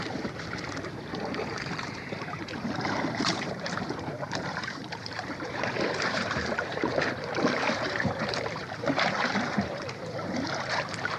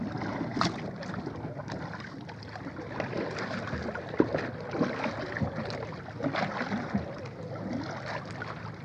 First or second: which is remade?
first